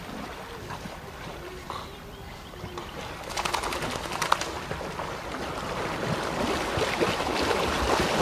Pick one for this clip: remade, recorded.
recorded